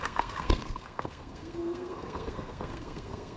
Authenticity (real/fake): fake